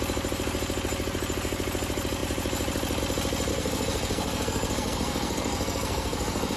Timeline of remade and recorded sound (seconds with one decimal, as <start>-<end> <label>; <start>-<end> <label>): 0.0-3.5 recorded; 3.5-6.6 remade